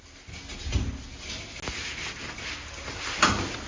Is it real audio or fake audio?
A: real